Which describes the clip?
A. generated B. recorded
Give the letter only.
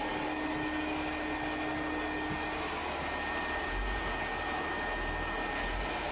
B